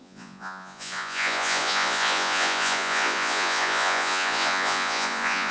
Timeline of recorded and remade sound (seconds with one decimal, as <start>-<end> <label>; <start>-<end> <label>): 0.0-5.5 remade